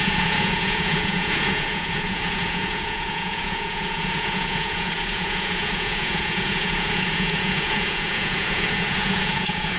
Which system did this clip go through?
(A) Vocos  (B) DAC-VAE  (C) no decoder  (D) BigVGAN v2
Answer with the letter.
A